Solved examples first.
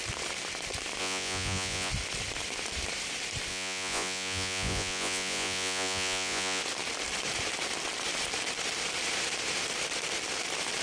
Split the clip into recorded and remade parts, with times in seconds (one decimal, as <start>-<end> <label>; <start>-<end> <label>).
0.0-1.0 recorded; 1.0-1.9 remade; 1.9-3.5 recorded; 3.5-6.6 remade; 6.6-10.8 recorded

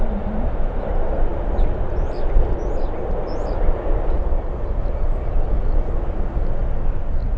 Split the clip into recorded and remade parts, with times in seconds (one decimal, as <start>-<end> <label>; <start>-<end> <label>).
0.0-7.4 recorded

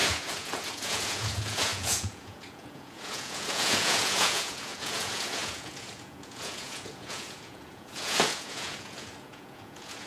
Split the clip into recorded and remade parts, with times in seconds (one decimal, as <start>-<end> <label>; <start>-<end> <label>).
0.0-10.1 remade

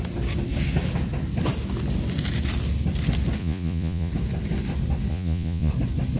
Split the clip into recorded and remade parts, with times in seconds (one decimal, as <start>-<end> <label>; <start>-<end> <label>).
0.0-3.4 recorded; 3.4-4.1 remade; 4.1-5.1 recorded; 5.1-5.7 remade; 5.7-6.2 recorded

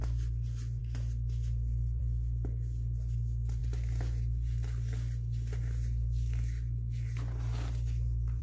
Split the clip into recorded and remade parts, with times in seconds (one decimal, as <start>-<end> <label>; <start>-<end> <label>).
0.0-8.4 recorded

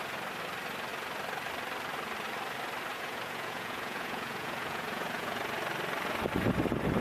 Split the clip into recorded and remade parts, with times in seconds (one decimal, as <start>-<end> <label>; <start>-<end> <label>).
0.0-2.9 recorded; 2.9-5.4 remade; 5.4-7.0 recorded